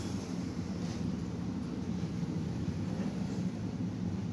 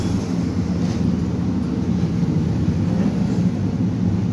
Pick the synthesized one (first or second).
first